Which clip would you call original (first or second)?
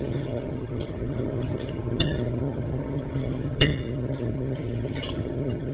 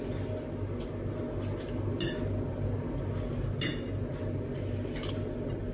second